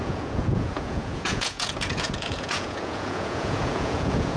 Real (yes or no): no